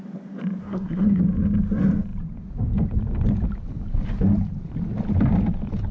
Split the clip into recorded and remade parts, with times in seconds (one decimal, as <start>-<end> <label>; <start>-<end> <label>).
0.0-0.6 recorded; 0.6-1.2 remade; 1.2-5.9 recorded